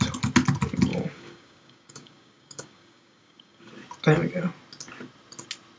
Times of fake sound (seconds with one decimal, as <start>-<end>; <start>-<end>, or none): 0.9-3.7